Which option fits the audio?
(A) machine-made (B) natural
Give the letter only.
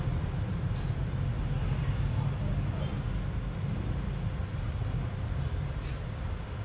A